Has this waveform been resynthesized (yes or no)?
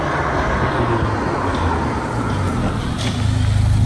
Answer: no